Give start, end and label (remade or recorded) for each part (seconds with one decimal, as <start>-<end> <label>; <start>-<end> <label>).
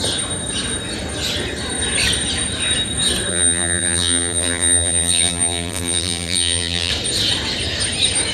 0.0-3.3 recorded; 3.3-6.9 remade; 6.9-8.3 recorded